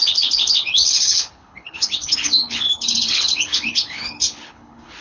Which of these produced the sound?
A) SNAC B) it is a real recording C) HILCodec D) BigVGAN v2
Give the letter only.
C